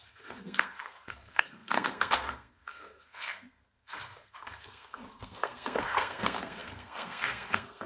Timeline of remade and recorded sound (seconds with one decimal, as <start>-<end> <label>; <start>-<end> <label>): 0.0-7.9 remade

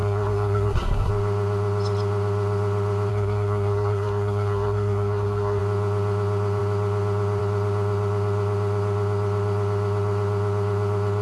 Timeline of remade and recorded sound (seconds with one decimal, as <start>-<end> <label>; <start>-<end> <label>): 0.0-1.1 remade; 1.1-3.1 recorded; 3.1-5.6 remade; 5.6-11.2 recorded

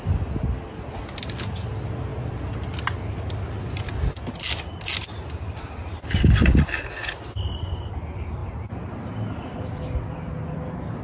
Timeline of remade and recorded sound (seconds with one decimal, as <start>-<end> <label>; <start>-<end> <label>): 0.0-2.1 recorded; 2.1-2.8 remade; 2.8-5.0 recorded; 5.0-5.8 remade; 5.8-8.4 recorded; 8.4-9.0 remade; 9.0-11.0 recorded

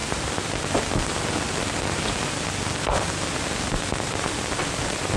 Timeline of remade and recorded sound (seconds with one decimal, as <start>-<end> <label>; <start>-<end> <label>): 0.0-5.2 recorded

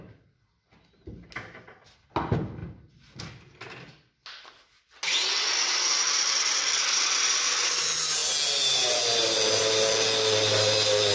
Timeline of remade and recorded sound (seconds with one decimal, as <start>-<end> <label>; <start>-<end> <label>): 0.0-11.1 recorded

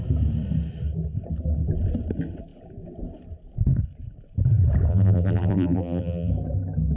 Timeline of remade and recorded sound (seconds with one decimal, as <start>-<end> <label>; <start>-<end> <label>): 0.0-4.9 recorded; 4.9-6.3 remade; 6.3-7.0 recorded

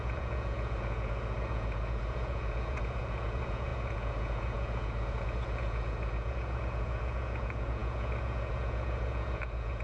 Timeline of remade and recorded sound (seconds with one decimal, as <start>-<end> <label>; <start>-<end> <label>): 0.0-9.8 remade